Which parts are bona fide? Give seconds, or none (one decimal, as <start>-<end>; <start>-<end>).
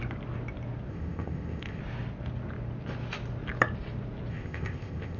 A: 0.0-0.9; 1.8-4.3